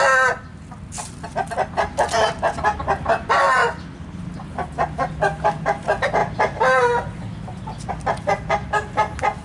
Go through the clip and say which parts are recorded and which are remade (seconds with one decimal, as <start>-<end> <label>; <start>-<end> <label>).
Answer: 0.0-9.4 recorded